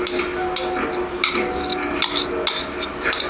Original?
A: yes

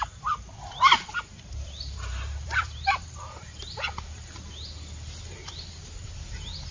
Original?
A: no